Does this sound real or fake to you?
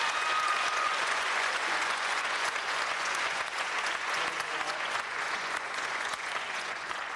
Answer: fake